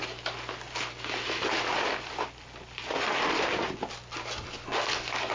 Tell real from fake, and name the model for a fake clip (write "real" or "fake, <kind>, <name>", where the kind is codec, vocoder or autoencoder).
real